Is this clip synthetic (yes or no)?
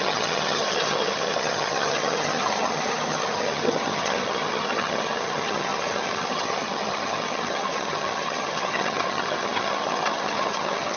yes